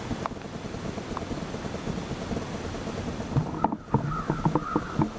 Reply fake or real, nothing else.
real